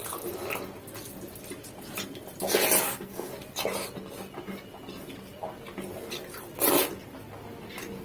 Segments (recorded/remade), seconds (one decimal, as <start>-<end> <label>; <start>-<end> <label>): 0.0-2.8 recorded; 2.8-3.3 remade; 3.3-8.0 recorded